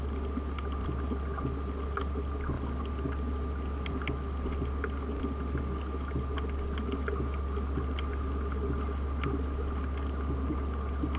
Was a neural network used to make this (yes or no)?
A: no